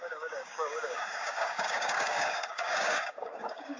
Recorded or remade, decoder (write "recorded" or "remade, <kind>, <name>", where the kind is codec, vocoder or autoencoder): remade, codec, DAC